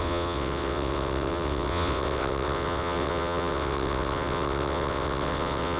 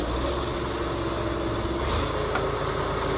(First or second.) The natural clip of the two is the second